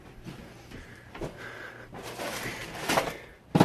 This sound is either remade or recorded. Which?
recorded